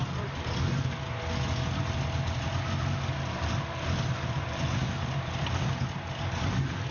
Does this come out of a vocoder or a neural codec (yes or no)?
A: no